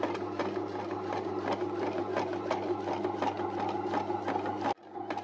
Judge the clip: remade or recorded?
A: recorded